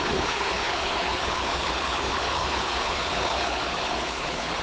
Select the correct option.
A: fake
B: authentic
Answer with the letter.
A